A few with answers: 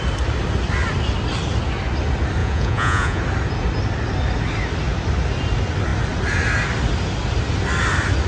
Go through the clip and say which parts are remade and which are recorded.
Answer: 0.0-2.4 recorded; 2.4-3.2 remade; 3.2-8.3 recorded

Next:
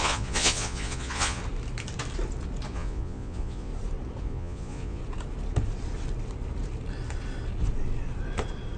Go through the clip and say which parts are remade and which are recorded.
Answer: 0.0-1.4 remade; 1.4-2.7 recorded; 2.7-3.7 remade; 3.7-4.2 recorded; 4.2-5.0 remade; 5.0-8.8 recorded

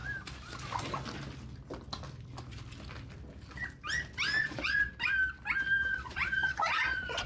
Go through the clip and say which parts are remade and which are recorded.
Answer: 0.0-4.4 recorded; 4.4-4.9 remade; 4.9-5.9 recorded; 5.9-7.3 remade

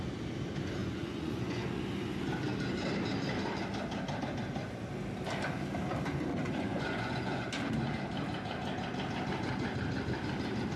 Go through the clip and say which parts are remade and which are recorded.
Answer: 0.0-0.8 recorded; 0.8-1.8 remade; 1.8-6.3 recorded; 6.3-7.5 remade; 7.5-10.8 recorded

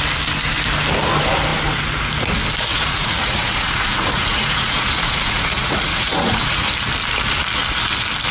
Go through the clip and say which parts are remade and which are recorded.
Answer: 0.0-2.7 recorded; 2.7-6.7 remade; 6.7-8.3 recorded